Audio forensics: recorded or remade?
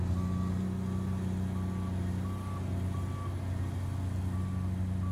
recorded